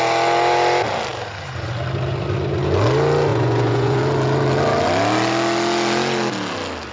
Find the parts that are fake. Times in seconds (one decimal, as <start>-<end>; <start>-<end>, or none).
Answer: 3.3-4.0